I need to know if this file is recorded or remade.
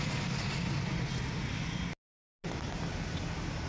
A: recorded